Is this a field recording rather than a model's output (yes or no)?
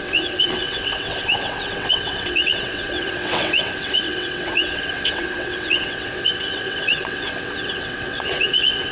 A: no